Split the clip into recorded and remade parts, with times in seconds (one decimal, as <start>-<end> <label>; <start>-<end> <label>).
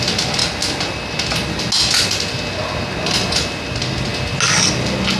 0.0-5.2 recorded